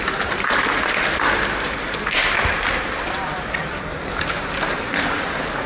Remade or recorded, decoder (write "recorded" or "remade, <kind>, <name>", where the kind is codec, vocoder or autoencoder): recorded